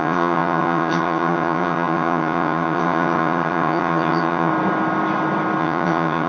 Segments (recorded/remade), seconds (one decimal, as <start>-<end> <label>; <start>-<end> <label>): 0.0-4.5 remade; 4.5-5.6 recorded; 5.6-6.3 remade